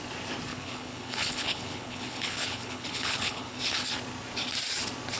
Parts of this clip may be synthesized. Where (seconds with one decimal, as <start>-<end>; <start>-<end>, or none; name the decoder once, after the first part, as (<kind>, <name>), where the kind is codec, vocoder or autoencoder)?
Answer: 0.5-3.6 (codec, HILCodec)